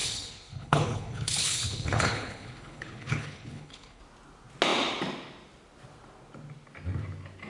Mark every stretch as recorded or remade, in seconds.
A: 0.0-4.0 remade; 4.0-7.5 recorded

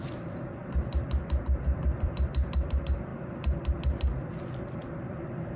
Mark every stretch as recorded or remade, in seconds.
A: 0.0-5.6 remade

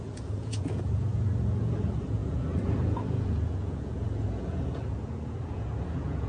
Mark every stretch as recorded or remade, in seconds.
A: 0.0-6.3 remade